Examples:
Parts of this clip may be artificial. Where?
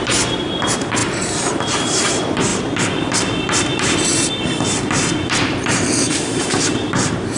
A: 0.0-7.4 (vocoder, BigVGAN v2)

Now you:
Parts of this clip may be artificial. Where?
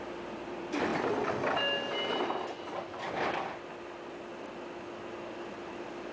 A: 0.0-0.9 (vocoder, BigVGAN v2); 2.2-4.3; 5.5-6.1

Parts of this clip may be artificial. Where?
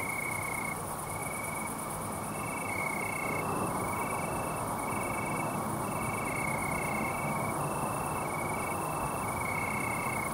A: 0.0-1.2 (vocoder, BigVGAN v2); 2.8-10.3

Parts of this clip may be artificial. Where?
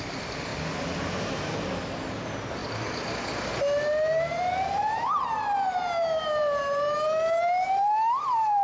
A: 0.0-0.5 (vocoder, BigVGAN v2); 2.1-2.6; 4.2-8.6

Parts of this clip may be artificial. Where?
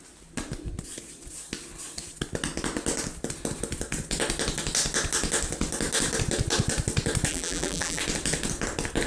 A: 7.3-8.0 (vocoder, BigVGAN v2)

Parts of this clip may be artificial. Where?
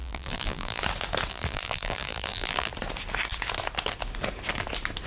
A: 0.0-0.8 (vocoder, BigVGAN v2); 1.3-2.7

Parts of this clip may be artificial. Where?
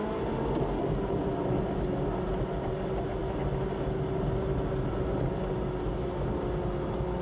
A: none